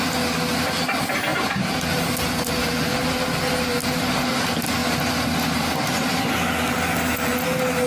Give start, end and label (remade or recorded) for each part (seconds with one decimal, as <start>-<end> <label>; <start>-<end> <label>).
0.0-1.3 recorded; 1.3-2.5 remade; 2.5-7.9 recorded